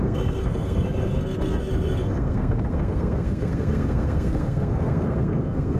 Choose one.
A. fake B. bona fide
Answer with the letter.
A